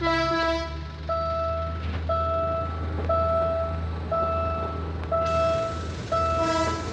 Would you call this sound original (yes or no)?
yes